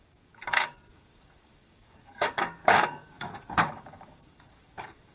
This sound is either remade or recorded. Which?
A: remade